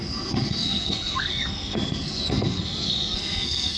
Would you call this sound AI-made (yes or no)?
yes